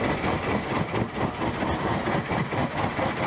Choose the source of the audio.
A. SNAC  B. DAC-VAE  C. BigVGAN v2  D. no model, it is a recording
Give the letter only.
D